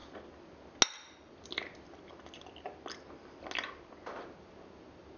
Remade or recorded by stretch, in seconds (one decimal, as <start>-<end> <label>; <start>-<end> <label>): 0.0-5.2 recorded